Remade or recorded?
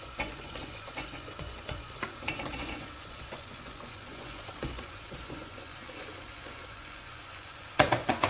remade